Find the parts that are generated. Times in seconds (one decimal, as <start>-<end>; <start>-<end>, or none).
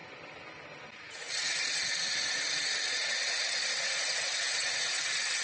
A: 1.5-4.1